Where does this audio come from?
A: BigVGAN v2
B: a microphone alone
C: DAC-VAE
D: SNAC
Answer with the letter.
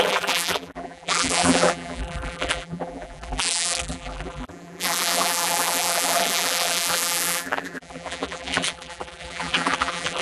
A